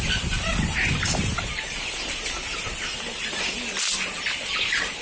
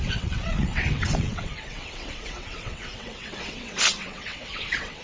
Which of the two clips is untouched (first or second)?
first